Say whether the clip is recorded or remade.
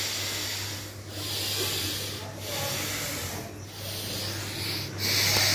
recorded